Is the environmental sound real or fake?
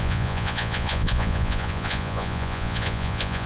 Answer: fake